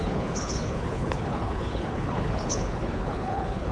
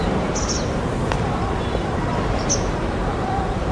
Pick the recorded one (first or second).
second